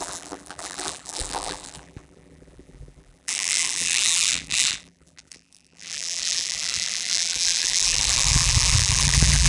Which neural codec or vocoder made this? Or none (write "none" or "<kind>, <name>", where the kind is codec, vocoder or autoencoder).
vocoder, BigVGAN v2